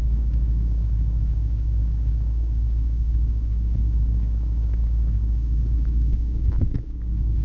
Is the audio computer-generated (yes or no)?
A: yes